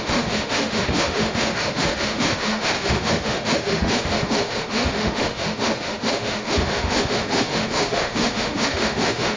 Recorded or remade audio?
remade